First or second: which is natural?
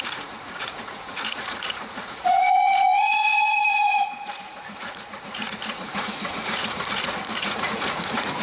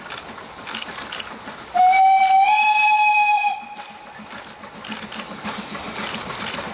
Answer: second